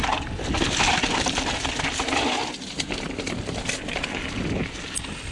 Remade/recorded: recorded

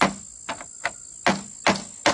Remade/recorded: recorded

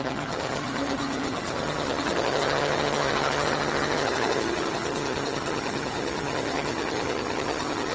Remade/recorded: remade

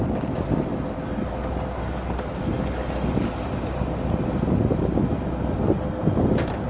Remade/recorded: recorded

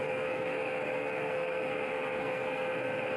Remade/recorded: remade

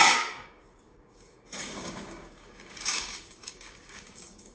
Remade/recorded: remade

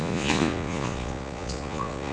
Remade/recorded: remade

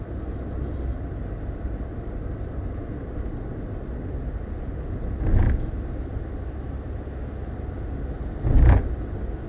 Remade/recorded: recorded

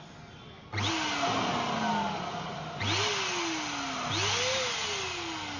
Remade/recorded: recorded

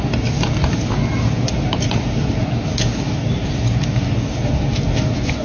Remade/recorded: recorded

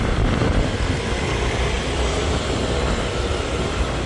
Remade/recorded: remade